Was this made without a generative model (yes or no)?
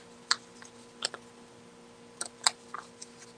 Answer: yes